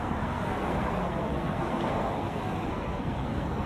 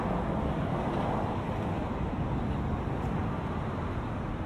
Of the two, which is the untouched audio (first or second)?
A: second